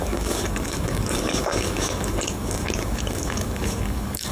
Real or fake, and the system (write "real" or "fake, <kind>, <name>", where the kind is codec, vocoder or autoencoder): fake, codec, DAC